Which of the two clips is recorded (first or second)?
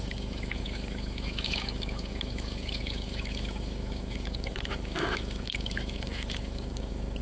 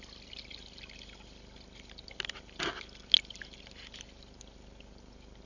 second